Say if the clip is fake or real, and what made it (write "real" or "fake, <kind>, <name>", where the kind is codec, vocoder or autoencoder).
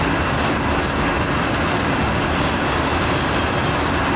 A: real